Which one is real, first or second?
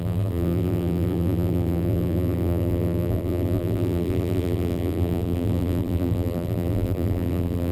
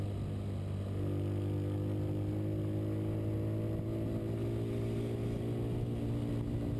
second